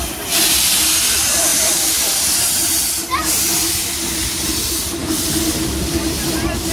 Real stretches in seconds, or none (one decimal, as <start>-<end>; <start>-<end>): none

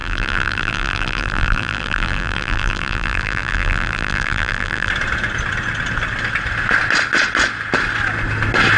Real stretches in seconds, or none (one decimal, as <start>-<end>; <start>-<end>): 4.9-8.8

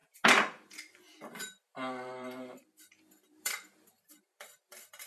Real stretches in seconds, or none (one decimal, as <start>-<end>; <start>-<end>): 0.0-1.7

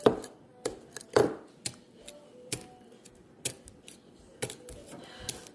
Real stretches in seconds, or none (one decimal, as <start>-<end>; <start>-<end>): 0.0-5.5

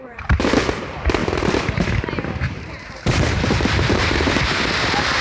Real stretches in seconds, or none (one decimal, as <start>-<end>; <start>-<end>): 0.5-1.2; 4.3-5.2

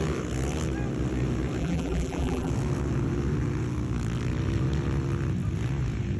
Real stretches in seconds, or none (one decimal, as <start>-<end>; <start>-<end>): 0.0-1.6; 2.5-6.2

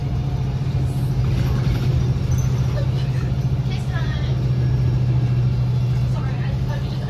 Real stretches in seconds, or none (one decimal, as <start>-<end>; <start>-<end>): 0.0-7.1